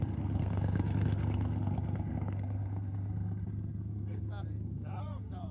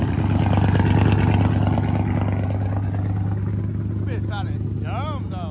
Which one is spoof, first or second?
first